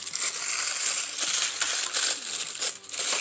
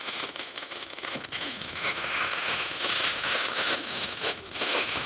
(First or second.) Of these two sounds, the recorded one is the first